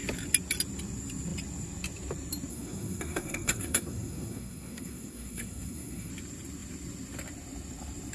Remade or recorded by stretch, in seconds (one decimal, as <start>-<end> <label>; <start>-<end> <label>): 0.0-2.5 recorded; 2.5-6.1 remade; 6.1-8.1 recorded